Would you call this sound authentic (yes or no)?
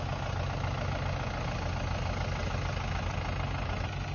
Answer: yes